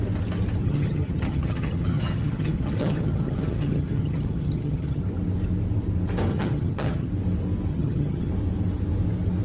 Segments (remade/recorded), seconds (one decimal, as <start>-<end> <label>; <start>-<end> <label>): 0.0-0.6 recorded; 0.6-5.0 remade; 5.0-6.3 recorded; 6.3-7.1 remade; 7.1-7.7 recorded; 7.7-8.3 remade; 8.3-9.4 recorded